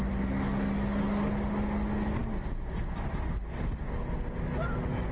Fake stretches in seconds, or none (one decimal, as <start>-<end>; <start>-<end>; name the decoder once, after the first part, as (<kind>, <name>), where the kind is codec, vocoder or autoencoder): none